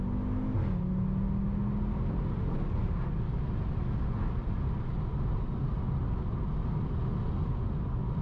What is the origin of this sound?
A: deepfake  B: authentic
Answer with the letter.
B